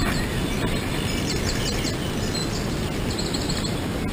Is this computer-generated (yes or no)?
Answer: no